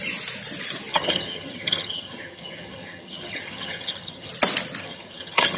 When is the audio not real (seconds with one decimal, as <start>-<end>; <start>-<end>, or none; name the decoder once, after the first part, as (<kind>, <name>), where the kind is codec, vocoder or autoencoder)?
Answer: 0.9-4.3 (vocoder, HiFi-GAN); 4.8-5.6